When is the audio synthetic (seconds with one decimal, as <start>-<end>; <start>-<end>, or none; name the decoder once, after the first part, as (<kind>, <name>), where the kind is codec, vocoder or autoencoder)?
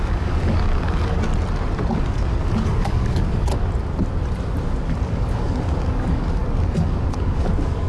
0.0-1.3 (codec, DAC); 2.0-3.5; 4.9-7.9